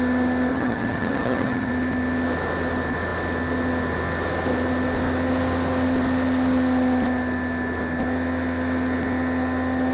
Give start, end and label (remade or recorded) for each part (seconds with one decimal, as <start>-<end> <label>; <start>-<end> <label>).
0.0-0.5 recorded; 0.5-1.7 remade; 1.7-9.9 recorded